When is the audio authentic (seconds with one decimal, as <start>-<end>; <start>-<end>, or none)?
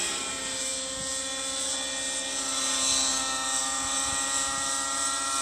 0.0-5.4